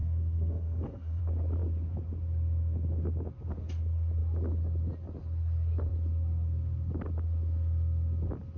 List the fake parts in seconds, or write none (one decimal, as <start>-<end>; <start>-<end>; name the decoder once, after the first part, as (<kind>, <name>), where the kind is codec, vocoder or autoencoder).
0.0-1.2 (codec, SNAC)

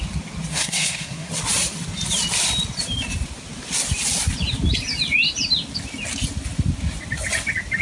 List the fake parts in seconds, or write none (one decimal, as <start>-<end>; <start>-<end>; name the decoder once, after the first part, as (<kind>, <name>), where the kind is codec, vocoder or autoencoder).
0.5-1.3 (codec, SNAC)

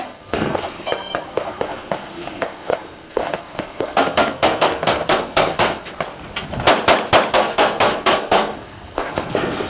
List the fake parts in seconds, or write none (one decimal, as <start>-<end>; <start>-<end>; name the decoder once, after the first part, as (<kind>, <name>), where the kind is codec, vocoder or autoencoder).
0.0-5.9 (codec, SNAC); 7.3-9.7